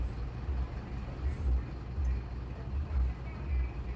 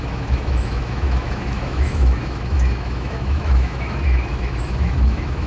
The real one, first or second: first